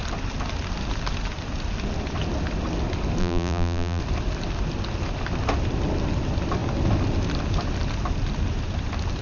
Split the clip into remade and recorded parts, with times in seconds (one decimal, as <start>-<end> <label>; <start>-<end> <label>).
0.0-3.2 recorded; 3.2-4.0 remade; 4.0-9.2 recorded